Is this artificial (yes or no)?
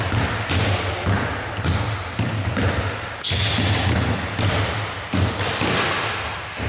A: no